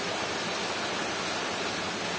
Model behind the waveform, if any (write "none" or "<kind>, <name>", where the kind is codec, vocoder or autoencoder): none